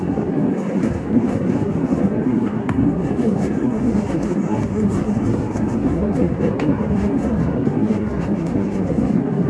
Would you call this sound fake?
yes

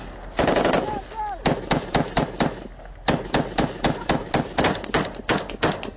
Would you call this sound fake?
no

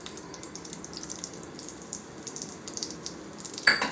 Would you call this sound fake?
yes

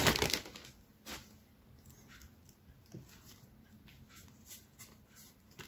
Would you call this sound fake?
no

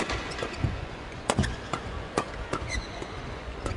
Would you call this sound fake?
yes